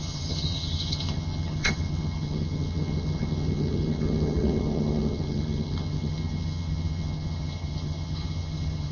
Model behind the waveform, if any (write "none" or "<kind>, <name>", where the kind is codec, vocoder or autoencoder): vocoder, HiFi-GAN